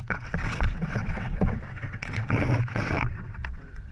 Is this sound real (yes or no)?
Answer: no